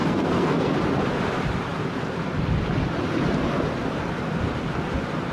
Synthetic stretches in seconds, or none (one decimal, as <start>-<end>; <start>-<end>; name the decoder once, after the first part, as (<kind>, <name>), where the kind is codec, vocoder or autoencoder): 0.0-0.7 (codec, SNAC)